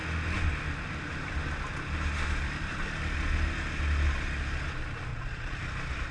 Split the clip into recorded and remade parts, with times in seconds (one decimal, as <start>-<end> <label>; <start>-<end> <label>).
0.0-5.1 recorded; 5.1-5.6 remade; 5.6-6.1 recorded